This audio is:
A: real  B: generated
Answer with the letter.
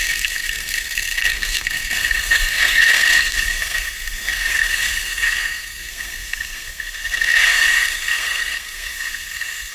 B